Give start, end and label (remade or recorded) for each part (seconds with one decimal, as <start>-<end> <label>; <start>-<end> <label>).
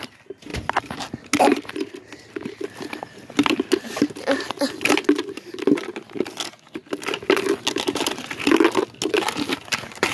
0.0-10.1 recorded